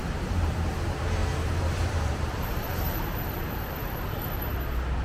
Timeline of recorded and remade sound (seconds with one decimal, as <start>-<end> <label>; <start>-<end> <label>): 0.0-0.7 remade; 0.7-1.2 recorded; 1.2-4.1 remade; 4.1-5.0 recorded